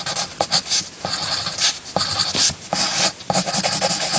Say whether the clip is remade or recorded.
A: recorded